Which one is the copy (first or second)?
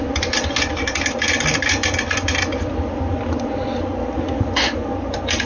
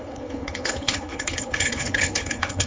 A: second